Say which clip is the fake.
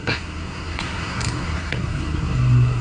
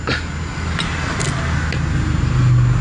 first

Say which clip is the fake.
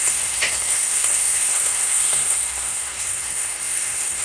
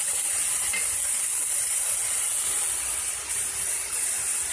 first